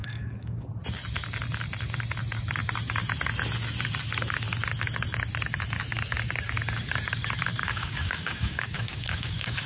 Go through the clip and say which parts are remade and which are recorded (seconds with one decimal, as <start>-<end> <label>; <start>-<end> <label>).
0.0-0.7 remade; 0.7-7.6 recorded; 7.6-9.7 remade